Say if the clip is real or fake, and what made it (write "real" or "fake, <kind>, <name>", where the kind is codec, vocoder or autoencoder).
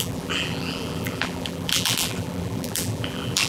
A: fake, vocoder, BigVGAN v2